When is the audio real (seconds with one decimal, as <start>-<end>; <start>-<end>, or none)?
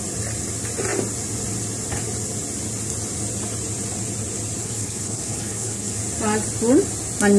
0.0-4.6; 6.0-7.4